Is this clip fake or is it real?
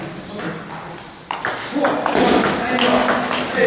real